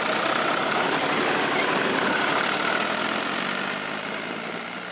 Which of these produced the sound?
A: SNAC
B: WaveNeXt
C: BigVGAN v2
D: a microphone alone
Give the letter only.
D